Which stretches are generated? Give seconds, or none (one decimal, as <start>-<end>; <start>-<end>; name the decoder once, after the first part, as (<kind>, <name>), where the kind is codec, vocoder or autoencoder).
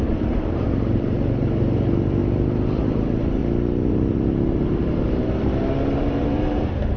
0.0-2.2 (vocoder, BigVGAN v2); 2.8-3.4; 3.9-7.0